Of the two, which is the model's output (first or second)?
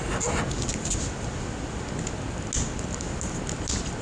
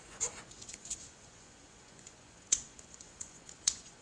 second